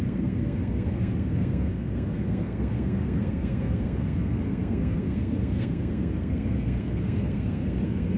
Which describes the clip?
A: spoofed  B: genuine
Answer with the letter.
A